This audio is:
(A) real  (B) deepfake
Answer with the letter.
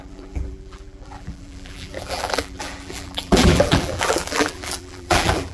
B